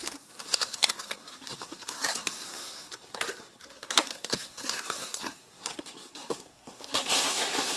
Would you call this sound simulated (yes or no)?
yes